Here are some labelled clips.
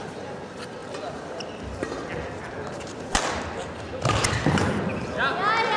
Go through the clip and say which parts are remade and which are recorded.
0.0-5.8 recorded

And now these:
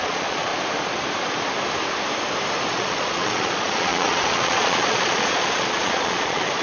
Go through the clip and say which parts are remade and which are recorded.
0.0-0.5 remade; 0.5-2.7 recorded; 2.7-6.6 remade

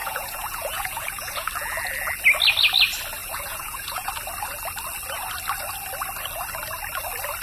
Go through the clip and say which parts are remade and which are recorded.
0.0-1.5 remade; 1.5-3.2 recorded; 3.2-4.1 remade; 4.1-7.4 recorded

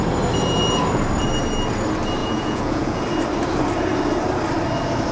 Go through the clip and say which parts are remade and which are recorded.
0.0-2.2 recorded; 2.2-3.0 remade; 3.0-5.1 recorded

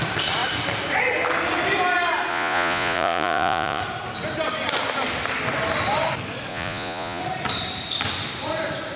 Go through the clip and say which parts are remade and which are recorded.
0.0-2.3 recorded; 2.3-3.8 remade; 3.8-6.5 recorded; 6.5-7.2 remade; 7.2-9.0 recorded

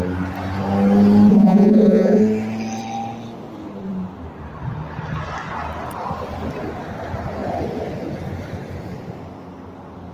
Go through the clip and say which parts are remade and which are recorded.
0.0-1.3 recorded; 1.3-2.2 remade; 2.2-10.1 recorded